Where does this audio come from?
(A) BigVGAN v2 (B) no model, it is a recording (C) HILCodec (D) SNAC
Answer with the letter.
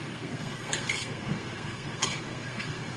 D